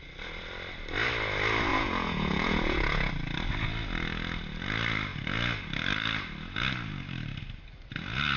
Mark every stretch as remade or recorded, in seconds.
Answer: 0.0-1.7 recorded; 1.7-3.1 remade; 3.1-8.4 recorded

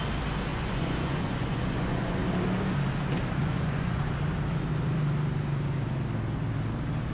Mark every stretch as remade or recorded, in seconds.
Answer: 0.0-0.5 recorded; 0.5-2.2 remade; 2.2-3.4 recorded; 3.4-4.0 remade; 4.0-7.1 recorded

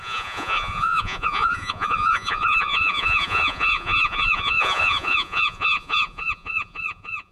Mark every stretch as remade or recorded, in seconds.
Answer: 0.0-7.3 remade

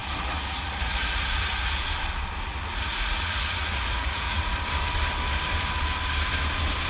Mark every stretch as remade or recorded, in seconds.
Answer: 0.0-1.9 remade; 1.9-2.5 recorded; 2.5-4.5 remade; 4.5-6.9 recorded

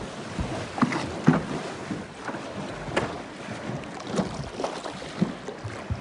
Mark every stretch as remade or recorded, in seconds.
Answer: 0.0-6.0 recorded

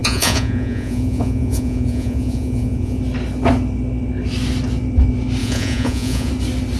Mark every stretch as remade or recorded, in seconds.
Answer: 0.0-3.0 remade; 3.0-5.4 recorded; 5.4-6.3 remade; 6.3-6.8 recorded